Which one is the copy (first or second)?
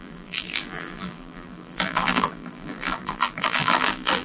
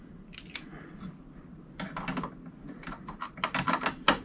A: first